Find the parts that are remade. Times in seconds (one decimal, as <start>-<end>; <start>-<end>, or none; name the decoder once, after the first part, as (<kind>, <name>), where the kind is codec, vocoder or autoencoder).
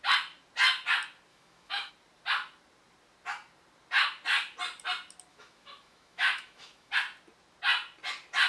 1.3-1.9 (autoencoder, DAC-VAE); 5.3-6.9